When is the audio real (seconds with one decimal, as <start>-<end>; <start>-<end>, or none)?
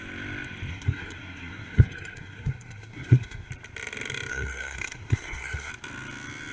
0.0-0.7; 3.5-4.3; 5.7-6.5